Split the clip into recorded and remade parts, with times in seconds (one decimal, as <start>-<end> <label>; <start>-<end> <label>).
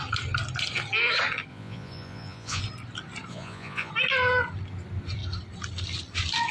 0.0-1.5 recorded; 1.5-2.6 remade; 2.6-3.3 recorded; 3.3-3.9 remade; 3.9-6.5 recorded